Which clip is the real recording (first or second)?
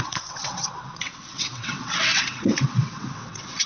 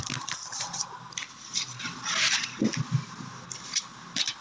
second